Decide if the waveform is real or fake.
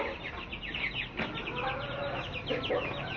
real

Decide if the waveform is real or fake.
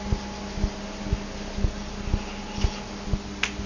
real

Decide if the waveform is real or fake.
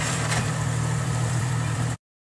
fake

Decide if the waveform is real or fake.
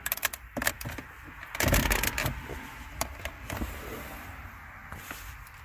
real